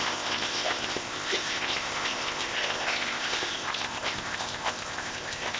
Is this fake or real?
fake